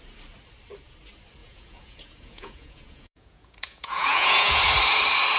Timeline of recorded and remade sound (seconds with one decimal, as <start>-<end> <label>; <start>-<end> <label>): 0.0-1.4 recorded; 1.4-4.6 remade; 4.6-5.4 recorded